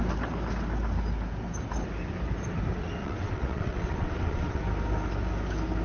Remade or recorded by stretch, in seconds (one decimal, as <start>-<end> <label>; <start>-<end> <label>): 0.0-3.0 recorded; 3.0-4.6 remade; 4.6-5.8 recorded